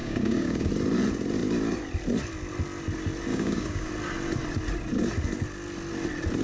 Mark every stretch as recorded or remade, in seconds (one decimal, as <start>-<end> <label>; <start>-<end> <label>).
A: 0.0-0.7 remade; 0.7-3.3 recorded; 3.3-3.9 remade; 3.9-6.4 recorded